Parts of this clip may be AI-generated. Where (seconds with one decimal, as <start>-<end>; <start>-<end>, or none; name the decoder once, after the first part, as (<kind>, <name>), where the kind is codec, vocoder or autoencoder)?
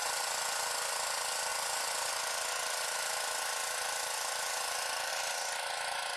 none